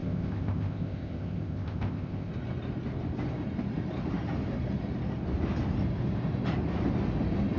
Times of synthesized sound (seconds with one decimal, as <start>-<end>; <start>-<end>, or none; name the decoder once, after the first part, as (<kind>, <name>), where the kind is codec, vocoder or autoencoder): 0.0-2.3 (codec, ZipCodec)